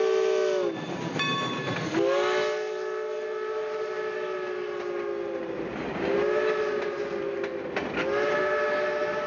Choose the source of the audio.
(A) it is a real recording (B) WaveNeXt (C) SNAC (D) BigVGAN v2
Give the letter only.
A